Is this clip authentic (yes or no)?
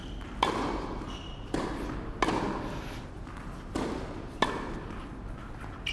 yes